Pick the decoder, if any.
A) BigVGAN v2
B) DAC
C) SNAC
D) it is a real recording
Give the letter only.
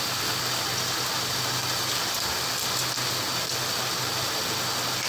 D